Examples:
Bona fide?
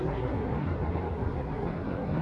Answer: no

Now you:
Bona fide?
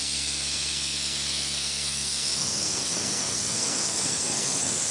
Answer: no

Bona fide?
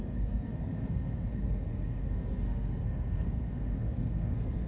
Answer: no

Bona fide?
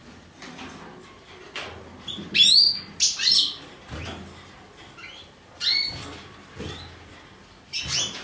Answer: yes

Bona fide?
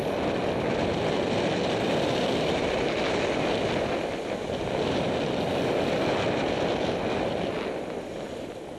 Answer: yes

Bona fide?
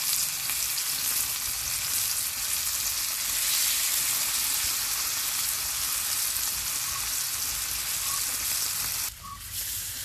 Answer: yes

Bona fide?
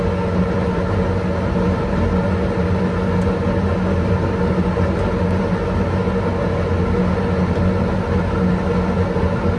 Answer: yes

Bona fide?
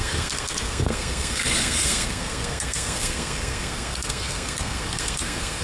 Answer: no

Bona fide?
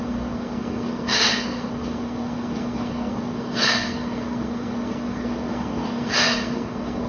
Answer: no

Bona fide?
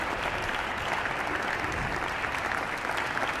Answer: yes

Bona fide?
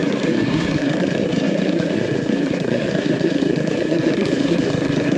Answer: no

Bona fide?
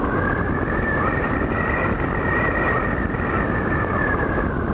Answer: yes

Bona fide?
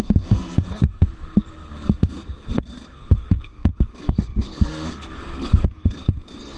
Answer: no